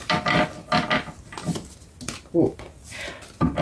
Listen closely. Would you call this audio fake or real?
real